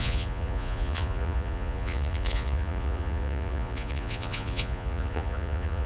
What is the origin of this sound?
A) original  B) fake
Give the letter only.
B